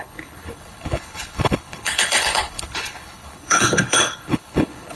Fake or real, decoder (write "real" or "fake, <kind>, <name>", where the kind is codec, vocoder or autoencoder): fake, codec, HILCodec